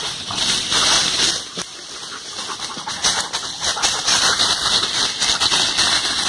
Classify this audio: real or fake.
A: real